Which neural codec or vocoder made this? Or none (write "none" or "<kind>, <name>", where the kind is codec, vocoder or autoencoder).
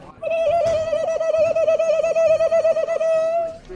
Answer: none